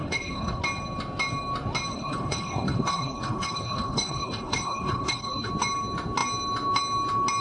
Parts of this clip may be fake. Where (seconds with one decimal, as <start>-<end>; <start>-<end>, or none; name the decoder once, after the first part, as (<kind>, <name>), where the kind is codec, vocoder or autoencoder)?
0.0-0.6 (codec, HILCodec); 1.9-5.5